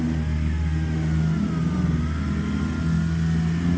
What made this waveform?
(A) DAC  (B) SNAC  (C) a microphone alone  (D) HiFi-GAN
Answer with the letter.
C